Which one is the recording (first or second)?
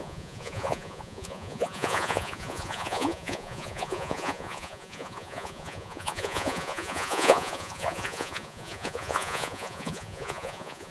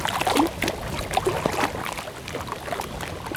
second